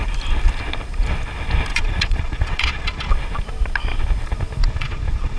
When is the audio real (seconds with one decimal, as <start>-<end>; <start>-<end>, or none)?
0.0-1.7; 3.1-4.6